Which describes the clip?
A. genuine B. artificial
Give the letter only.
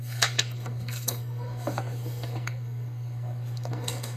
B